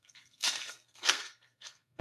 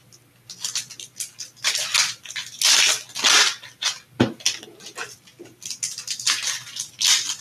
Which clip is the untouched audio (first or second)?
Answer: second